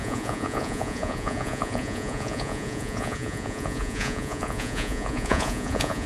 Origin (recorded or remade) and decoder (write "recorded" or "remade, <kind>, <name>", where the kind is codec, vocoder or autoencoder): remade, vocoder, Vocos